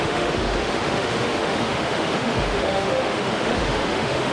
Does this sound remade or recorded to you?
remade